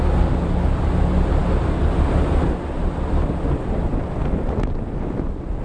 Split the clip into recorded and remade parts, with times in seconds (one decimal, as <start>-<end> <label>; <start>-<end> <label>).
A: 0.0-5.6 recorded